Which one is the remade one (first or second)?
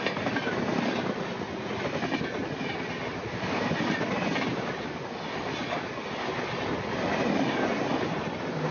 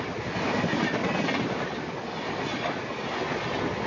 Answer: first